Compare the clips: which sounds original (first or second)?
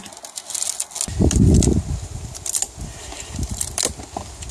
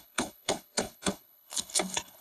first